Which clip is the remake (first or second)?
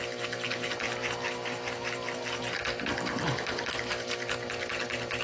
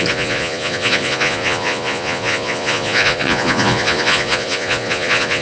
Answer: second